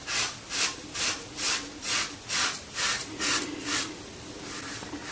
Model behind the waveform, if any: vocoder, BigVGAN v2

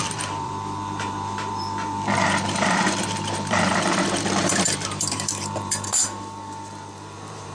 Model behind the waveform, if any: vocoder, BigVGAN v2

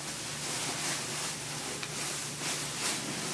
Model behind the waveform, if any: none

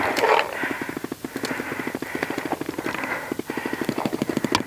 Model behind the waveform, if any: none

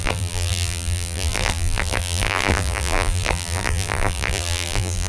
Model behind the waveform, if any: vocoder, BigVGAN v2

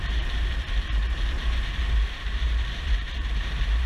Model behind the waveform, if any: vocoder, BigVGAN v2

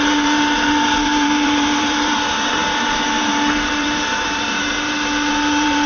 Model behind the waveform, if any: vocoder, BigVGAN v2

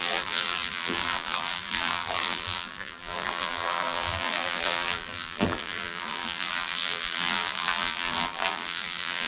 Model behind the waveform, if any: vocoder, BigVGAN v2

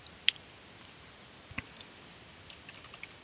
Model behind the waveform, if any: none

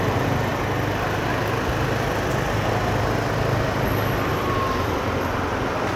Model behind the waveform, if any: none